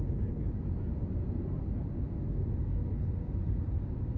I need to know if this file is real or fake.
real